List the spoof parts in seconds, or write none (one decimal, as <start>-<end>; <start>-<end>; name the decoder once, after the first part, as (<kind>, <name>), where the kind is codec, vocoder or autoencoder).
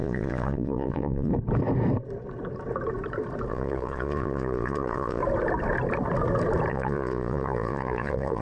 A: 0.0-1.3 (vocoder, Vocos); 3.5-5.2; 6.7-8.4